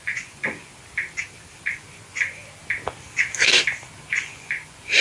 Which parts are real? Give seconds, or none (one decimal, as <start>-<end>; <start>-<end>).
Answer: 0.7-1.6; 2.4-4.1